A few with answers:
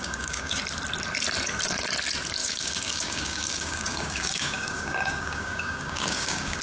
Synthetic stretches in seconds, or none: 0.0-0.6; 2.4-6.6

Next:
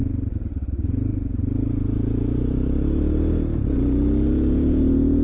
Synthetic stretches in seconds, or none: none

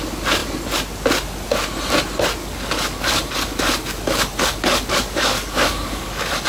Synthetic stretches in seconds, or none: 2.4-6.5